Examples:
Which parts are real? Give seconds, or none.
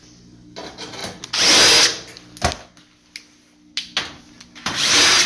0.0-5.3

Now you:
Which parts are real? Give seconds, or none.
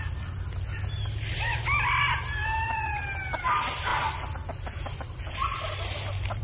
0.0-6.4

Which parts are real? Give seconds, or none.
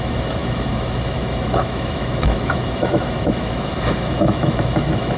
none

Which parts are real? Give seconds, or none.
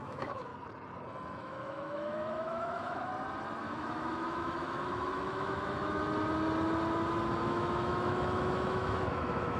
0.5-1.4; 3.1-3.6; 6.0-7.4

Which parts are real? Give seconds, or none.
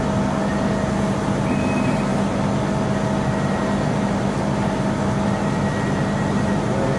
0.0-7.0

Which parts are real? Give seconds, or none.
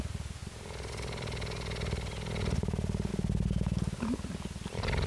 0.0-5.1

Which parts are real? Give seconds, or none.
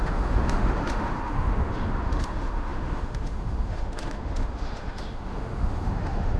none